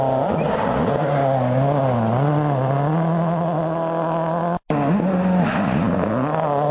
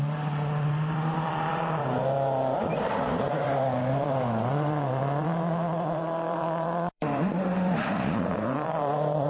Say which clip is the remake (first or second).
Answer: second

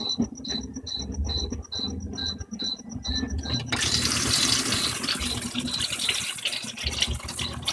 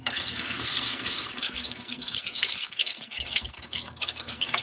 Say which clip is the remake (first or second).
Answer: second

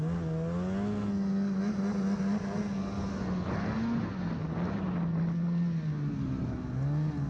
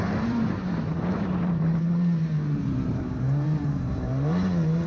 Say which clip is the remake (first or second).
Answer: second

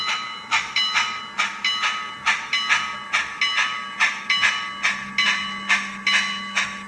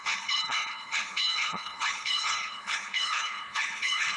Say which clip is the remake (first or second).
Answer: second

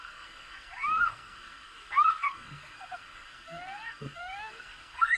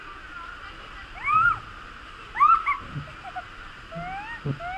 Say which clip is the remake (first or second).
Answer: first